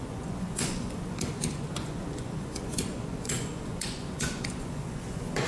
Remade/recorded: remade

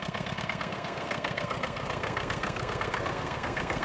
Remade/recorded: remade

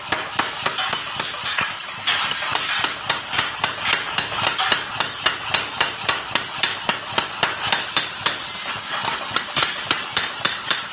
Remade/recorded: recorded